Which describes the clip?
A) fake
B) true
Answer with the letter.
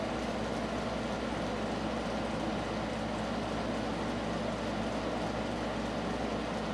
B